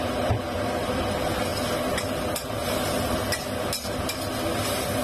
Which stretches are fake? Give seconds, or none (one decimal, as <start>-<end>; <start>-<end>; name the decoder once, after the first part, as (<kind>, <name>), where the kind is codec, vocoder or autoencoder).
none